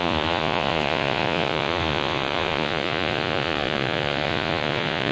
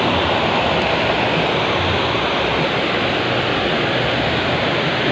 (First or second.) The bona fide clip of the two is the second